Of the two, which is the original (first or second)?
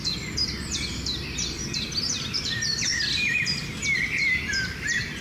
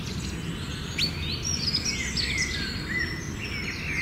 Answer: second